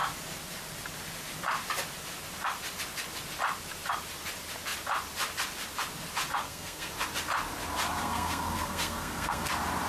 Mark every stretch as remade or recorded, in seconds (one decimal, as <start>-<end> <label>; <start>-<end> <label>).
0.0-6.4 recorded; 6.4-6.9 remade; 6.9-8.0 recorded; 8.0-9.5 remade; 9.5-9.9 recorded